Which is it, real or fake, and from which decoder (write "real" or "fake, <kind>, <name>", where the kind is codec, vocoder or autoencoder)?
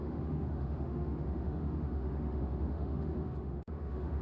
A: fake, autoencoder, DAC-VAE